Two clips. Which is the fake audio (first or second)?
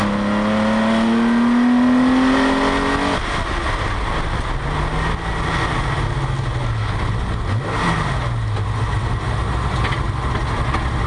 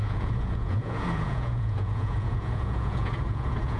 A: second